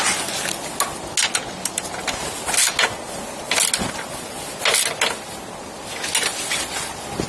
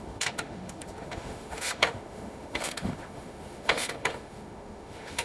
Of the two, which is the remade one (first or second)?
second